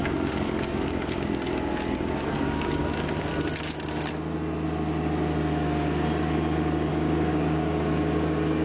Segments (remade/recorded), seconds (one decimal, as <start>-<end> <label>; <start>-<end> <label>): 0.0-3.3 remade; 3.3-6.9 recorded; 6.9-8.6 remade